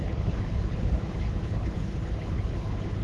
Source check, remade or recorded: remade